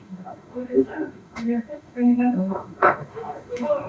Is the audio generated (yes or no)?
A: yes